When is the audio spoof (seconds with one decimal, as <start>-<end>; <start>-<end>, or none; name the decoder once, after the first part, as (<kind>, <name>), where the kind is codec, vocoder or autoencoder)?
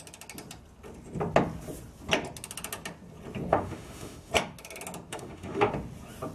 3.5-4.3 (autoencoder, DAC-VAE); 5.1-5.7